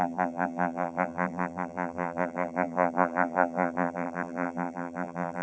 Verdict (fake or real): fake